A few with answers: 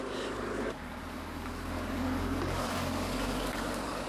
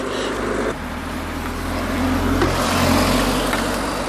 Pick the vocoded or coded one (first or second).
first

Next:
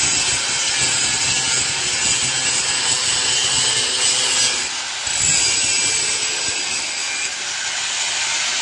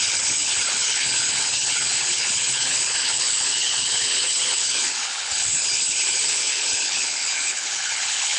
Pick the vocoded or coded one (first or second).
second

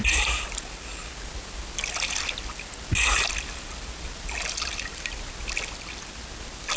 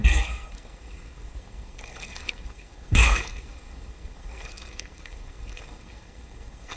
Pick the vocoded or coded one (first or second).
second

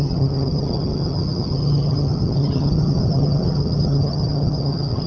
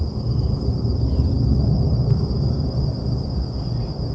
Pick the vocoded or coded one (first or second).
first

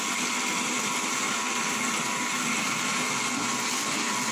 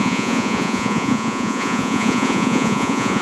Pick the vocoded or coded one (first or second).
second